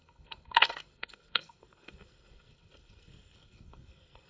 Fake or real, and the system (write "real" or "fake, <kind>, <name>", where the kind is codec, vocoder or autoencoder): fake, codec, SNAC